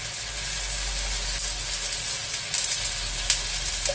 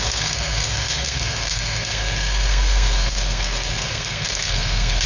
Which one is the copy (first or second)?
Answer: second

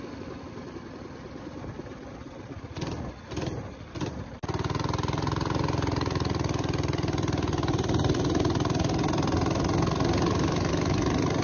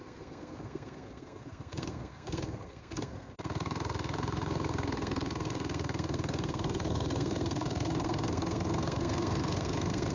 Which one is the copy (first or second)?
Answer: second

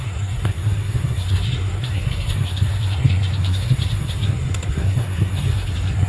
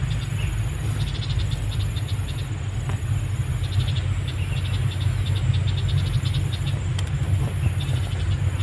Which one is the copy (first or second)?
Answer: first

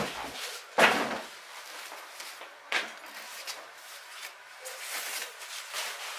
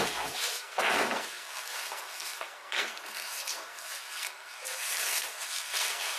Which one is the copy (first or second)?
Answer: second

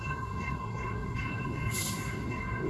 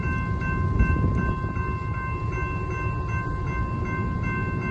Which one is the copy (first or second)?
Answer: first